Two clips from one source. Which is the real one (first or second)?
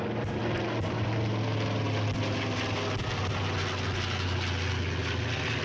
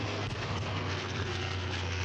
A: first